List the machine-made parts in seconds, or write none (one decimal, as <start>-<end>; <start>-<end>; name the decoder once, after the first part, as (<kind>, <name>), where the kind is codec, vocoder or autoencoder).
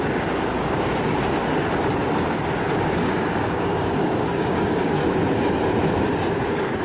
0.0-1.4 (codec, DAC); 2.8-5.0; 6.0-6.8